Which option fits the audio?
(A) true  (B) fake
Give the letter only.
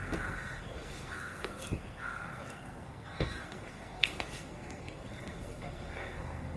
B